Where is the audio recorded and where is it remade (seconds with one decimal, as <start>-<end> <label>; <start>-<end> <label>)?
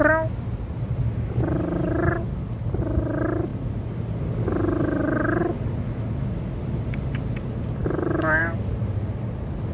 0.0-9.7 recorded